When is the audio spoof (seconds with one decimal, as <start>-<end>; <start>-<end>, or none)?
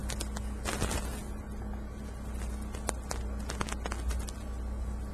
none